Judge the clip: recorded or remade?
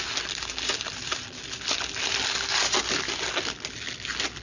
recorded